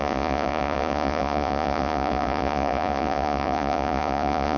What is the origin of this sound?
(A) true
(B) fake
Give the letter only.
B